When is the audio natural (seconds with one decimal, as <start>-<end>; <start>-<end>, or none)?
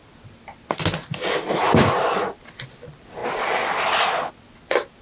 0.0-5.0